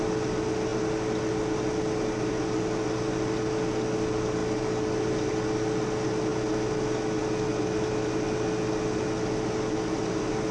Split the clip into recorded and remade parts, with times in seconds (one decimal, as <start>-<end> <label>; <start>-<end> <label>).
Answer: 0.0-10.5 recorded